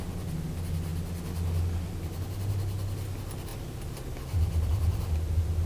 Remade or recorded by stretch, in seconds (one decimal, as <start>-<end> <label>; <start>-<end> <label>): 0.0-5.7 recorded